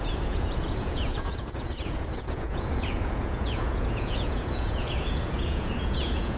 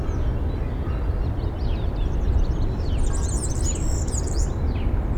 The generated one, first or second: first